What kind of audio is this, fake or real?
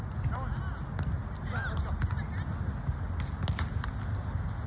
real